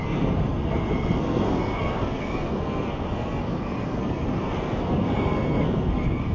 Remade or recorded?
remade